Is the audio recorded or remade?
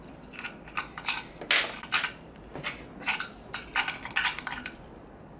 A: recorded